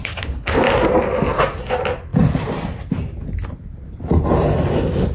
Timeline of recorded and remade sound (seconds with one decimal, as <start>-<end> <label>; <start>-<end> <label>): 0.0-0.6 remade; 0.6-5.1 recorded